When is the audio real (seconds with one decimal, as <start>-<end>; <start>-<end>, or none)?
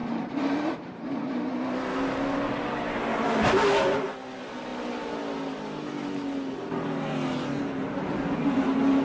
0.9-9.0